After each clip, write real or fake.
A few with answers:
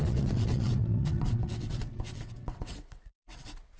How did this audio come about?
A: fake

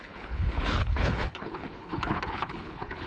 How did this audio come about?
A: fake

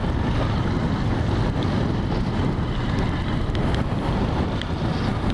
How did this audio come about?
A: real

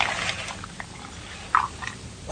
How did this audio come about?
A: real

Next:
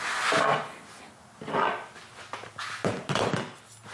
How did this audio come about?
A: real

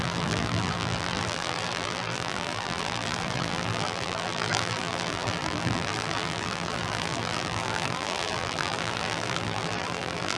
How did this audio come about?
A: fake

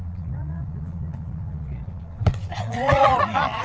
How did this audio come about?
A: fake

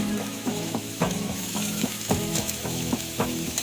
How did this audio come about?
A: fake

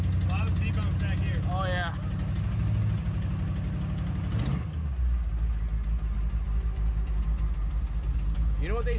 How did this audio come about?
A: real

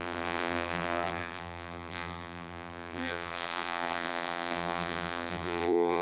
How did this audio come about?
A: fake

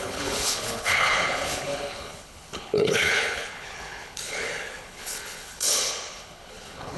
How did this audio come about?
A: fake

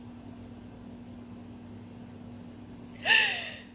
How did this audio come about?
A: real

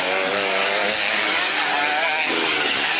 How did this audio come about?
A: fake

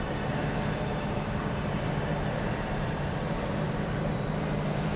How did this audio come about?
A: fake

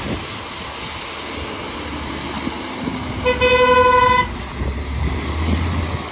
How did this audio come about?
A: real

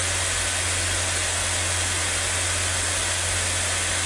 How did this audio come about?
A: real